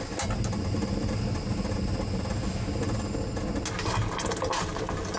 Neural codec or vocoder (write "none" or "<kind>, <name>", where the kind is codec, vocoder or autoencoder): none